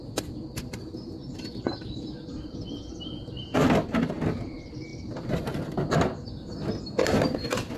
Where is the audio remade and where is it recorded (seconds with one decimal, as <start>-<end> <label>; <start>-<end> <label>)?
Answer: 0.0-1.1 remade; 1.1-4.9 recorded; 4.9-5.6 remade; 5.6-7.8 recorded